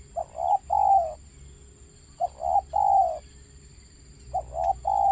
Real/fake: real